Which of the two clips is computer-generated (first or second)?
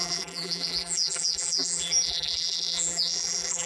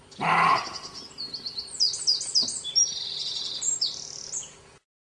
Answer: first